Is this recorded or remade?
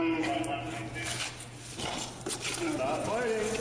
recorded